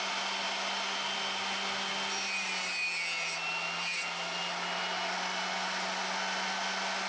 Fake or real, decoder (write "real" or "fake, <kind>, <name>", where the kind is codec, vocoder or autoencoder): real